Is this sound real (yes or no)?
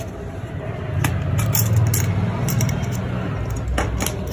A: yes